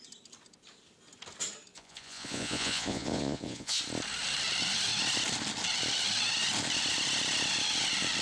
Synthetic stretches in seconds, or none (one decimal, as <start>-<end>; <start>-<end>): 1.7-3.8